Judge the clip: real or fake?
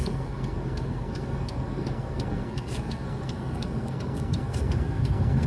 fake